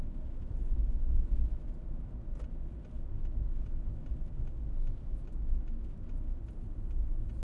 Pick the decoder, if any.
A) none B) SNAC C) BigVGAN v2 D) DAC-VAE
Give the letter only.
A